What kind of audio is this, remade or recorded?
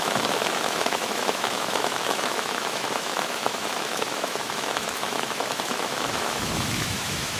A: remade